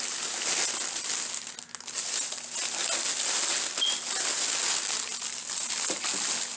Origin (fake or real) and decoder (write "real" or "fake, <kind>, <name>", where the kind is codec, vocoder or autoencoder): real